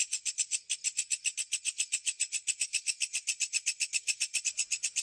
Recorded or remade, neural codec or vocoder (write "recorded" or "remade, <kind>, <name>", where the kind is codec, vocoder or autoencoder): recorded